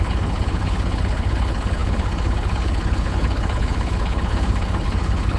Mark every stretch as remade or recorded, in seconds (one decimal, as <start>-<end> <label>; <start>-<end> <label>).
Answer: 0.0-5.4 remade